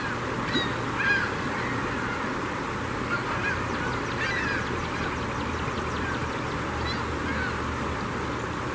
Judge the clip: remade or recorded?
recorded